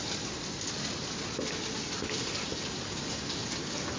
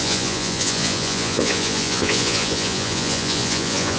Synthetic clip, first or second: second